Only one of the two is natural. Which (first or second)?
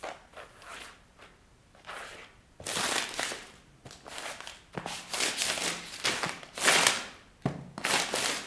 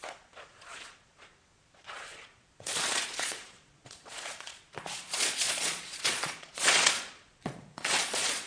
first